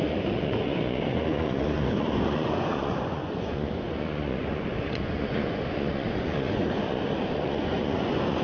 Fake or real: fake